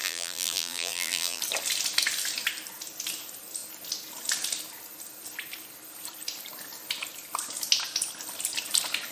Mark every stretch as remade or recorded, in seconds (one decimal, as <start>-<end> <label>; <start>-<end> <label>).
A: 0.0-1.4 remade; 1.4-9.1 recorded